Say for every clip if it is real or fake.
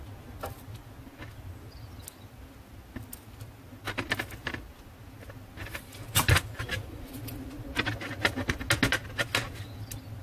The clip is real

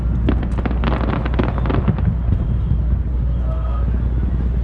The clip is real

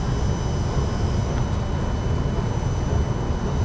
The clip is real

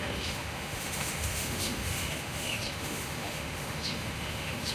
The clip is fake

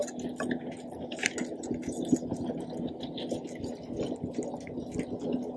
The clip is real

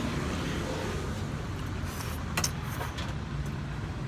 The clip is real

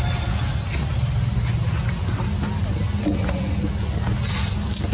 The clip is real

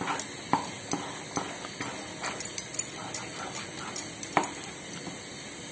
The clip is real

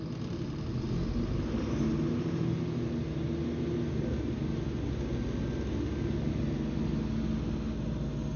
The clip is real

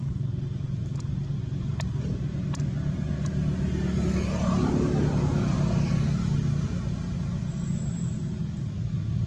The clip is real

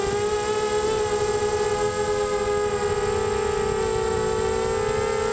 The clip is real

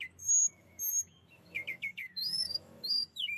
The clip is fake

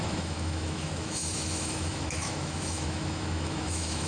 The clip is fake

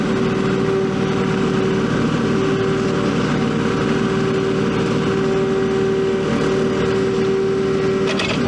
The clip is real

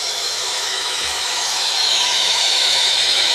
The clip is fake